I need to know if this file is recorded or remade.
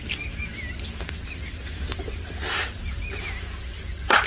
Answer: recorded